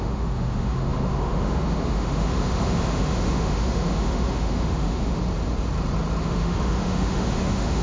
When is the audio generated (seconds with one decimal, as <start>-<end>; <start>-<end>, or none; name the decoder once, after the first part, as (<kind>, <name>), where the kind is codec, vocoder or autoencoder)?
0.0-5.2 (autoencoder, DAC-VAE); 6.2-7.8